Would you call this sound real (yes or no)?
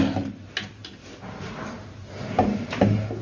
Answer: yes